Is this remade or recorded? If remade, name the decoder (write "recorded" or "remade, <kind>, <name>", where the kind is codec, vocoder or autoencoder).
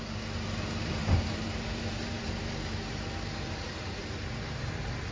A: remade, vocoder, BigVGAN v2